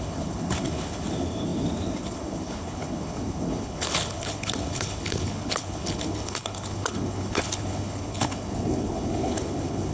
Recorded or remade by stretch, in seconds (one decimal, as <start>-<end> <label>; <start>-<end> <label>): 0.0-9.9 remade